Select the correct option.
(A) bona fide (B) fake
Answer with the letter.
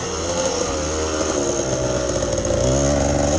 A